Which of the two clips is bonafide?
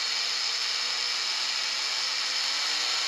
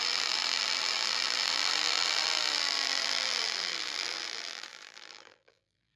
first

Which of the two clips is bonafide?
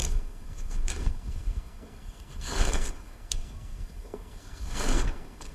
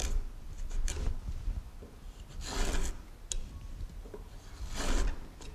second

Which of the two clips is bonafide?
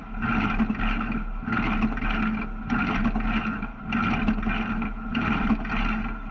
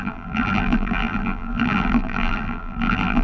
first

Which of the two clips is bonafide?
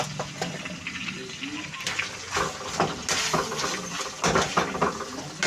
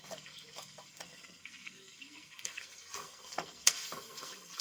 first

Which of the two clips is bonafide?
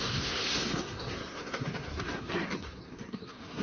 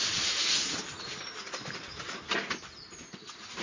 second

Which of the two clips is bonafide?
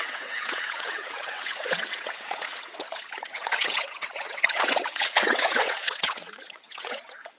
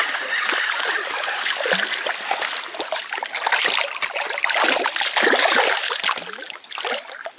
second